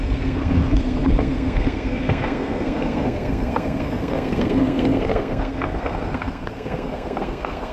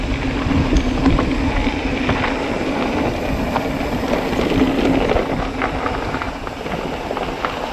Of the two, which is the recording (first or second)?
second